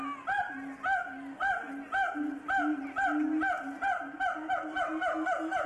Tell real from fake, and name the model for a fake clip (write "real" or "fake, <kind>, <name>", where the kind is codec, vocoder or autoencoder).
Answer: real